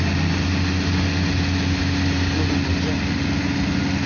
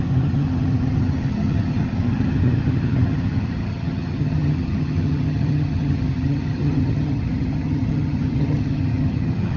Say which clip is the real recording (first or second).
first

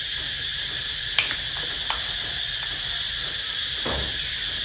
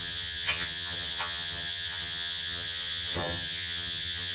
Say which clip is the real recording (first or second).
first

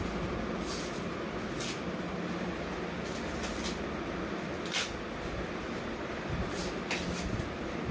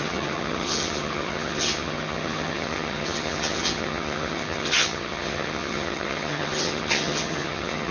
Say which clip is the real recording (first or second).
first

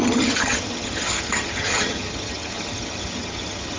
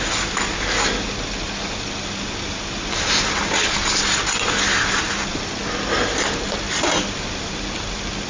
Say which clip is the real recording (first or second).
second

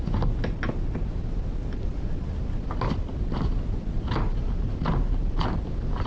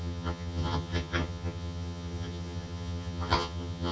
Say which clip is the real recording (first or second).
first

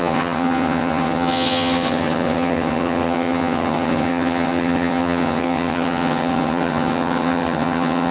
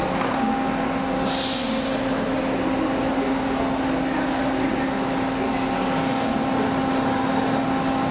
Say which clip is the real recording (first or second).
second